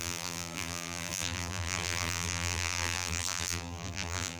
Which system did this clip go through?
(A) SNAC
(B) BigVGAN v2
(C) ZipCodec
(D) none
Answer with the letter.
B